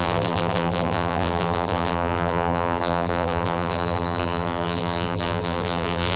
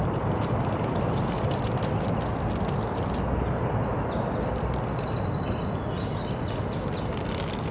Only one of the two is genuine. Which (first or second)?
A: second